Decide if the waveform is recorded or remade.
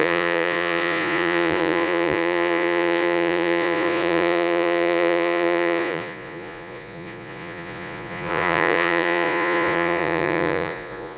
remade